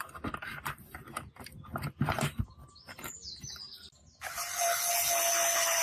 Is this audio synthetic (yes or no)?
no